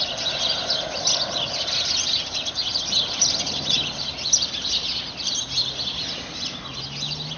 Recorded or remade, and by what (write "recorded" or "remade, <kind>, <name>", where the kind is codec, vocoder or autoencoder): recorded